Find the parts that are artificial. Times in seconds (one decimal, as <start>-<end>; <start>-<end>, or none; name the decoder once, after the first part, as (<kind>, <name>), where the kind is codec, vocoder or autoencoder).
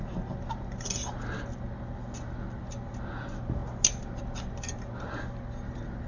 none